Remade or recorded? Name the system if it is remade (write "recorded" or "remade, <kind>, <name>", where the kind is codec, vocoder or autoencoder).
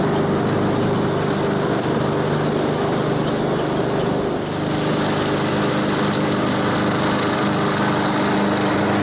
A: recorded